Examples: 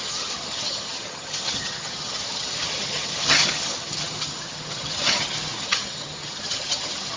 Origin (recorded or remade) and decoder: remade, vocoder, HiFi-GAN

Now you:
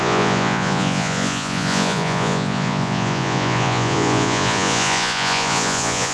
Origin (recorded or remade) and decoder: remade, vocoder, Vocos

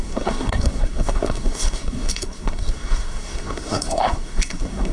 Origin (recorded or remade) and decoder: remade, codec, SNAC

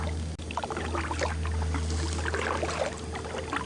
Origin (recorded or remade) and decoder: recorded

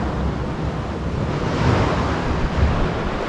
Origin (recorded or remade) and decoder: recorded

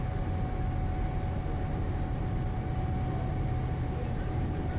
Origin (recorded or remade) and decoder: recorded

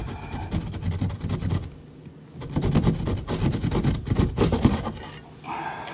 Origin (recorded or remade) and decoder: recorded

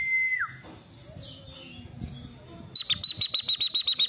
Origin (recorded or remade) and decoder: recorded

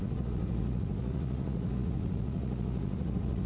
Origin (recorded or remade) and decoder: remade, vocoder, Vocos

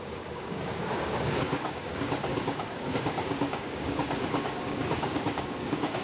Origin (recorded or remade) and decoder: remade, codec, DAC